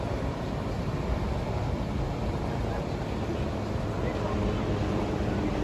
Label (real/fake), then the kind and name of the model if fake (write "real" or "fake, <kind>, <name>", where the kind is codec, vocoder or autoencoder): real